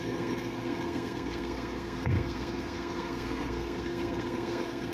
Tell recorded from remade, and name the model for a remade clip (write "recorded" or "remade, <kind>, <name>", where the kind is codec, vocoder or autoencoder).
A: remade, codec, SNAC